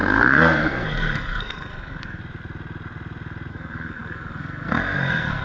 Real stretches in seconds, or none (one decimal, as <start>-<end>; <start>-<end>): 2.2-3.5